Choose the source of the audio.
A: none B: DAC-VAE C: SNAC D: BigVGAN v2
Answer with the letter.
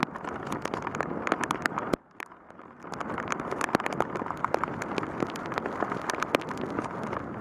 A